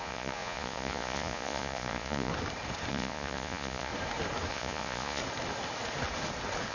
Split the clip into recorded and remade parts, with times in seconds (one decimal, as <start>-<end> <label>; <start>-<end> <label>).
0.0-2.3 remade; 2.3-2.9 recorded; 2.9-3.9 remade; 3.9-4.5 recorded; 4.5-5.2 remade; 5.2-6.7 recorded